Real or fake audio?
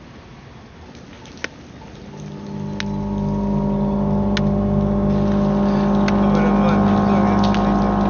real